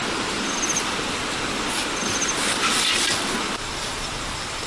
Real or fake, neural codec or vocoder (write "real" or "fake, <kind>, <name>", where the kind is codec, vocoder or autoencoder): fake, vocoder, BigVGAN v2